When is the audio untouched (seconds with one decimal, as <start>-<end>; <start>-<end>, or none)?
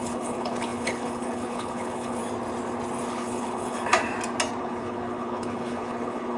2.2-3.1; 3.9-4.6